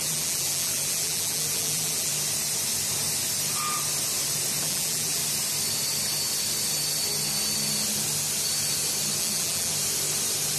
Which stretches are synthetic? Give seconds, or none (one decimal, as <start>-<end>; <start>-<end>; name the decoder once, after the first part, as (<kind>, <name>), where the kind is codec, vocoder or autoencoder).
0.0-2.1 (vocoder, BigVGAN v2); 4.6-5.2; 9.2-9.7